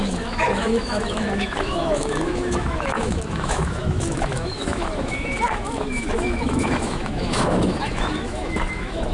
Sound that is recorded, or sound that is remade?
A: remade